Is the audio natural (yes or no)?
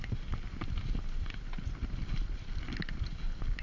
yes